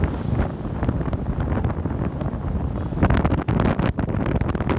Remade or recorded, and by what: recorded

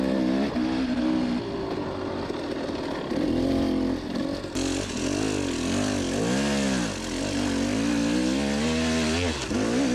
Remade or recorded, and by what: recorded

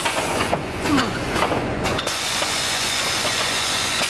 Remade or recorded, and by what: remade, vocoder, Vocos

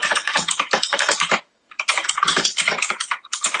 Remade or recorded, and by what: remade, codec, DAC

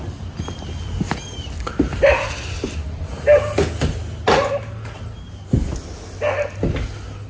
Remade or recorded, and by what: recorded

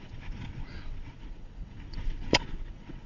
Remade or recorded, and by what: remade, vocoder, WaveNeXt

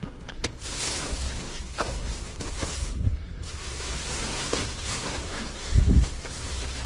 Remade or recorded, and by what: remade, codec, SNAC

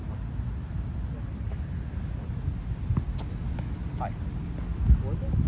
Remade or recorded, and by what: recorded